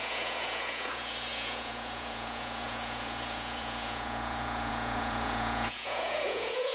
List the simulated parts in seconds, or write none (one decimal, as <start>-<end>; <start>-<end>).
0.0-6.7